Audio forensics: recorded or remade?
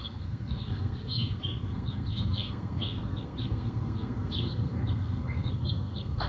remade